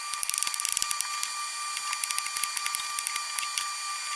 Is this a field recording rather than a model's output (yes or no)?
yes